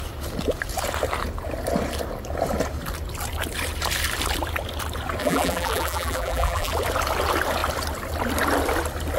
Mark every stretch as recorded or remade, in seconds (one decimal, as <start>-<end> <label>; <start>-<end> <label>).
0.0-5.2 recorded; 5.2-6.7 remade; 6.7-9.2 recorded